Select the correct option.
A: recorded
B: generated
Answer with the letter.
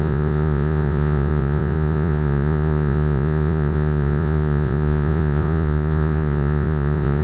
B